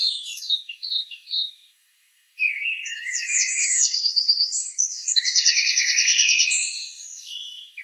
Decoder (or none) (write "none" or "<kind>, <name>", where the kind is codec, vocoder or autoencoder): codec, DAC